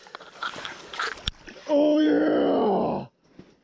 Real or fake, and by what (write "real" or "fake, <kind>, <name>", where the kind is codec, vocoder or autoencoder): fake, vocoder, BigVGAN v2